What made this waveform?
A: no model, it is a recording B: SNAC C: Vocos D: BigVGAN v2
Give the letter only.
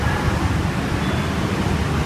A